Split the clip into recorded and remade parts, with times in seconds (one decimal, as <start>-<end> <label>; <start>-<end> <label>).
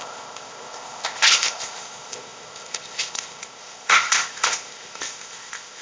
0.0-5.8 remade